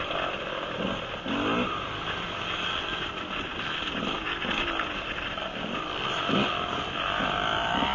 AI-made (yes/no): no